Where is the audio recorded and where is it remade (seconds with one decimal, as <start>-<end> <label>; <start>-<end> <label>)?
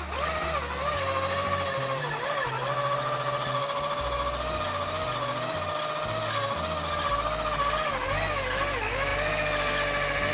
0.0-10.3 recorded